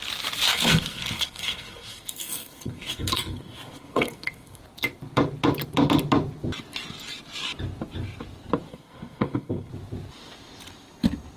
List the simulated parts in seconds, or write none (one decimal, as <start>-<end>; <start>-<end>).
0.5-4.6; 8.7-9.7